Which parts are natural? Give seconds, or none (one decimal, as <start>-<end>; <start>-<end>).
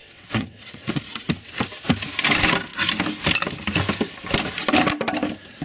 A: 1.0-5.6